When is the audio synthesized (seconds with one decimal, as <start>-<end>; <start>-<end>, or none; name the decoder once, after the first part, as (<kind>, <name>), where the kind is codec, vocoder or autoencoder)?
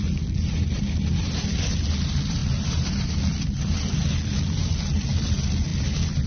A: none